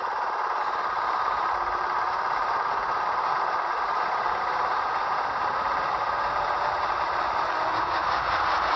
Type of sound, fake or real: fake